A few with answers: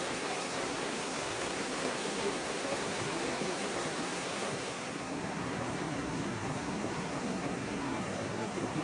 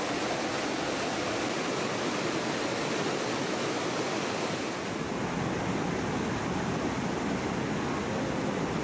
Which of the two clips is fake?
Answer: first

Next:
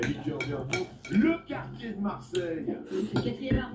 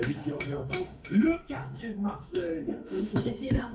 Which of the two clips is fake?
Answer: second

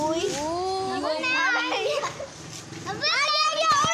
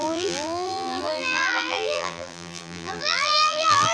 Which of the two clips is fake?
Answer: second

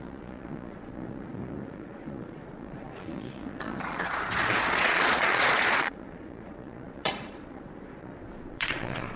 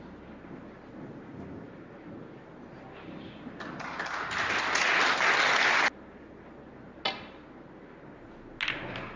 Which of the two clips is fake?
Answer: first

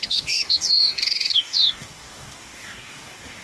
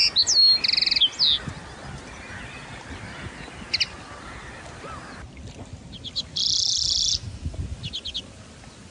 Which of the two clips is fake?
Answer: first